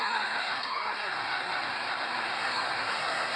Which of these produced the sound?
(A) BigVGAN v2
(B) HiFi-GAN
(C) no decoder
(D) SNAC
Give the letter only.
D